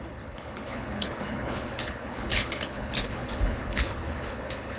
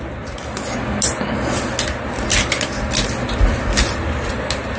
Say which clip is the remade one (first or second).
first